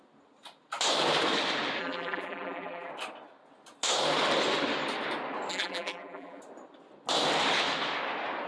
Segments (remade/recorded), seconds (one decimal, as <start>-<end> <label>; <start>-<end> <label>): 0.0-1.8 recorded; 1.8-2.9 remade; 2.9-5.5 recorded; 5.5-6.4 remade; 6.4-8.5 recorded